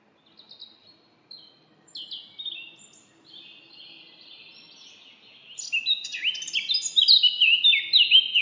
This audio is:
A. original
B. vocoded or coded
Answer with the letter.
A